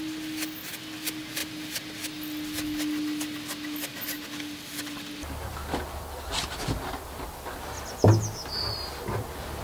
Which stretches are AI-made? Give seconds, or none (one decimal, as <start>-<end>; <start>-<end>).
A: none

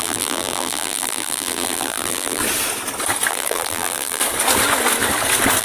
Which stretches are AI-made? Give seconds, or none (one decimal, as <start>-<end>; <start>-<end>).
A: 0.0-2.4; 3.3-4.2